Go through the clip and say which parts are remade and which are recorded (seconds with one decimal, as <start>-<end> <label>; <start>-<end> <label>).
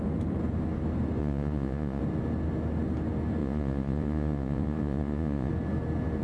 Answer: 0.0-1.2 recorded; 1.2-2.0 remade; 2.0-3.4 recorded; 3.4-5.5 remade; 5.5-6.2 recorded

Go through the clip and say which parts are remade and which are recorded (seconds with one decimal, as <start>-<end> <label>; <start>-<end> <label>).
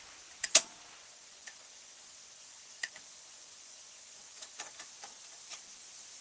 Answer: 0.0-1.0 recorded; 1.0-4.7 remade; 4.7-6.2 recorded